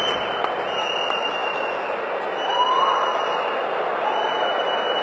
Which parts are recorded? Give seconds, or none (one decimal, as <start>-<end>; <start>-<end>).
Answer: 0.0-5.0